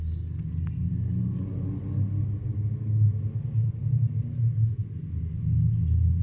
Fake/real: real